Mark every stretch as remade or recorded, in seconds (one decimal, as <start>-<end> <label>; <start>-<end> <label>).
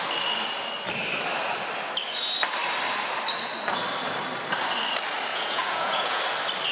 0.0-5.3 recorded; 5.3-6.2 remade; 6.2-6.7 recorded